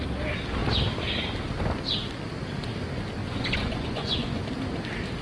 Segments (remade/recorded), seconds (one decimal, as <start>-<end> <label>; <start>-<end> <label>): 0.0-3.2 recorded; 3.2-4.4 remade; 4.4-5.2 recorded